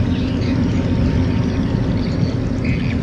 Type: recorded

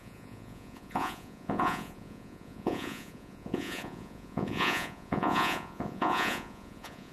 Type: remade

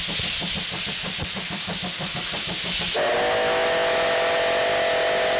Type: recorded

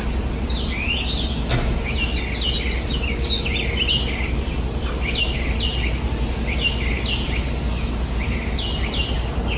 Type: recorded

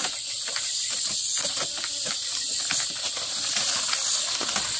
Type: recorded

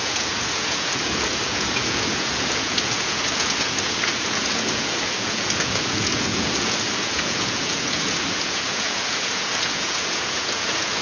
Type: remade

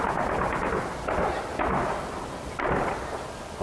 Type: recorded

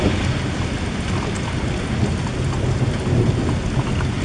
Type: recorded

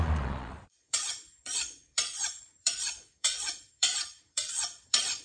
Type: remade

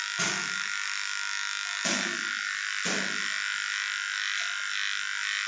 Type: recorded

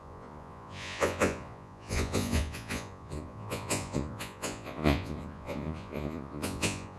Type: remade